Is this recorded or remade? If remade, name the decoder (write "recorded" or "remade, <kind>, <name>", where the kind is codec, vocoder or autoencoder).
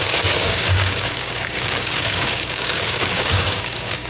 remade, codec, DAC